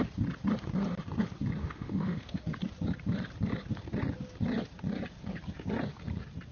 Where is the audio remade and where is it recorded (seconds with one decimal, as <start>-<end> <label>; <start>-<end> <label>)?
0.0-1.6 recorded; 1.6-2.4 remade; 2.4-6.5 recorded